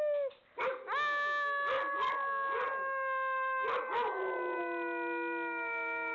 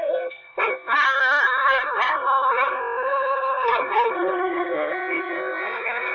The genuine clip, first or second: first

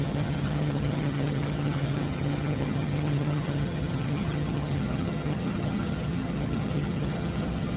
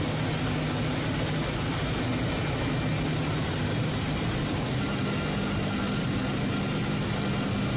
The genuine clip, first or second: second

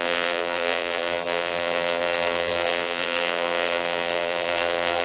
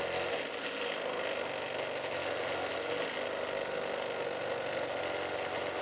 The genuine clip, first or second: second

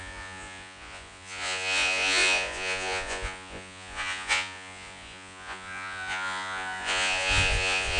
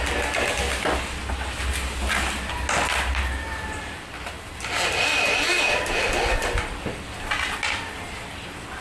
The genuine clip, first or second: second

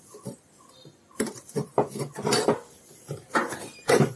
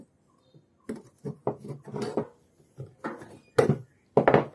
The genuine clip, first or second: second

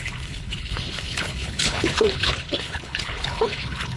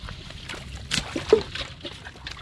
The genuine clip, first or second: second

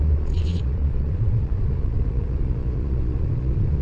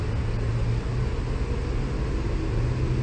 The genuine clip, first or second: second